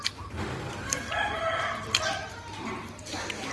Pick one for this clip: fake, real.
fake